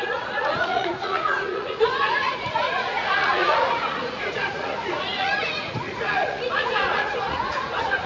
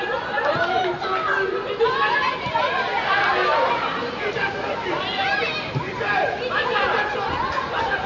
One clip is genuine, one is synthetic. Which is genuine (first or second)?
second